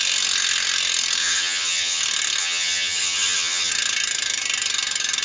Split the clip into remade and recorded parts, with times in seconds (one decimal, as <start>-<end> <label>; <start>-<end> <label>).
0.0-1.2 recorded; 1.2-2.0 remade; 2.0-2.4 recorded; 2.4-3.7 remade; 3.7-5.2 recorded